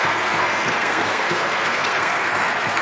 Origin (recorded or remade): remade